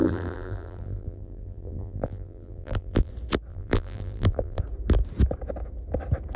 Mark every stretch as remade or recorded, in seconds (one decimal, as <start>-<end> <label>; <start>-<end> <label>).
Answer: 0.0-3.1 remade; 3.1-3.5 recorded; 3.5-4.6 remade; 4.6-6.4 recorded